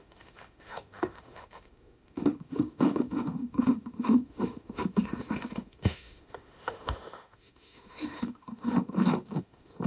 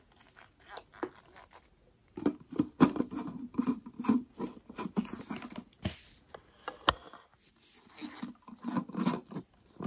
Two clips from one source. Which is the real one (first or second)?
second